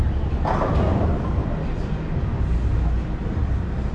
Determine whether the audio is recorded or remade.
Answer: recorded